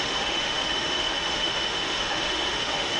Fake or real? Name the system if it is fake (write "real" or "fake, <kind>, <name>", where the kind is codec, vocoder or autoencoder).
fake, autoencoder, DAC-VAE